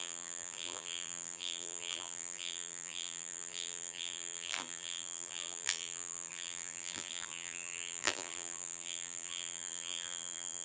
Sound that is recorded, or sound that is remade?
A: remade